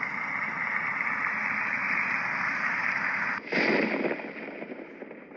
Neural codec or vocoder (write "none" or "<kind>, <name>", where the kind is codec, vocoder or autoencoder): none